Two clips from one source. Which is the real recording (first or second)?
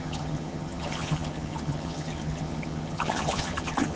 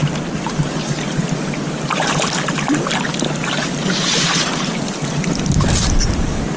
second